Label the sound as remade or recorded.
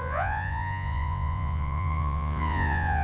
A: remade